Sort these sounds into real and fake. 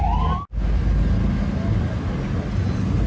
real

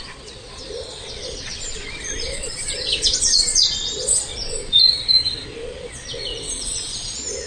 fake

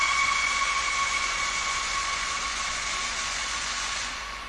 fake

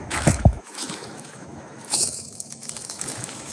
fake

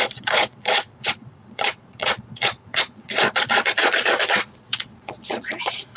fake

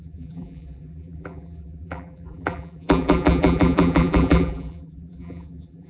fake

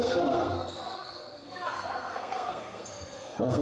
fake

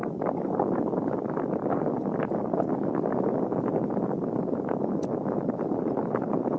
real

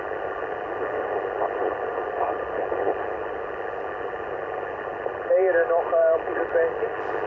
real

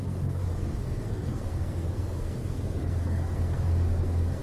fake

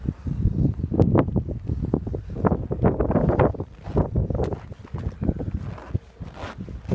real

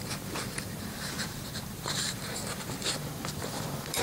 fake